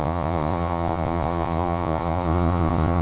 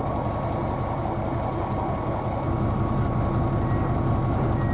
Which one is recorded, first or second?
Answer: second